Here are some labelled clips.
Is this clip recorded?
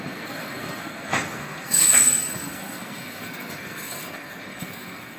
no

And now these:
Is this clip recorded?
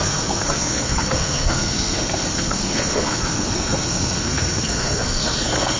no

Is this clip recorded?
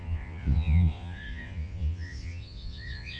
no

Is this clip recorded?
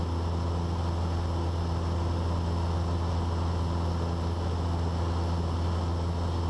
yes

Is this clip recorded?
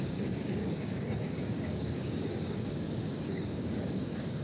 no